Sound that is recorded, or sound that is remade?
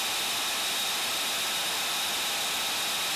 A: recorded